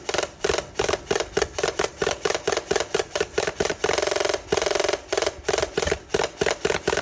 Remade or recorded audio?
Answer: recorded